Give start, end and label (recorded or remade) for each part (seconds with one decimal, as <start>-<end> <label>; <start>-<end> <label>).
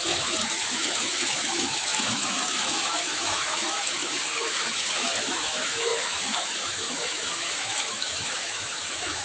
0.0-9.2 remade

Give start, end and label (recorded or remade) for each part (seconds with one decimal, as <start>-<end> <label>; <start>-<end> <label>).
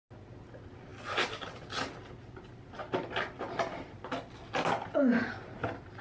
0.0-6.0 recorded